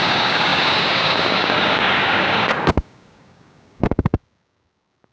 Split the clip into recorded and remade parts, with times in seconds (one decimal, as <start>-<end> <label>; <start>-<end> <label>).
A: 0.0-5.1 remade